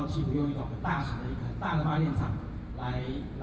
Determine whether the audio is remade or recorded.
remade